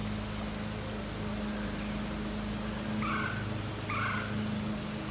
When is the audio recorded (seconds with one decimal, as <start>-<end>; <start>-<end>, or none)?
0.0-5.1